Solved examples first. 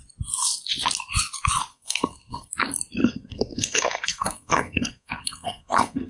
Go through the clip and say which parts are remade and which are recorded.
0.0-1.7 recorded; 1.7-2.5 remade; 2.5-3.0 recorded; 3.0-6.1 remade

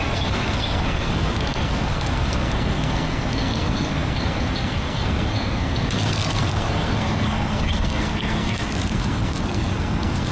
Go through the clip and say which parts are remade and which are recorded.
0.0-10.3 remade

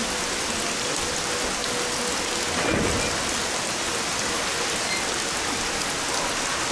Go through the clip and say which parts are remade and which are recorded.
0.0-6.7 recorded

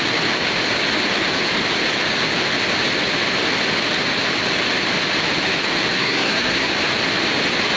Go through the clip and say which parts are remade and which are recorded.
0.0-5.9 recorded; 5.9-6.7 remade; 6.7-7.8 recorded

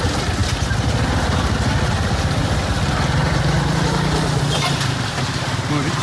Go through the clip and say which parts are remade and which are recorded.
0.0-6.0 recorded

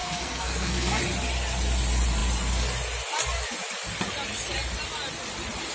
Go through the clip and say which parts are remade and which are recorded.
0.0-1.0 remade; 1.0-5.7 recorded

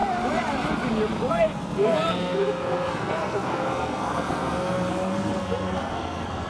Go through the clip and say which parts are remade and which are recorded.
0.0-1.3 recorded; 1.3-6.5 remade